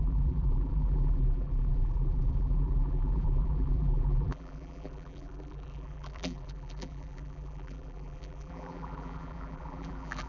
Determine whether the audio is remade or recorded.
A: remade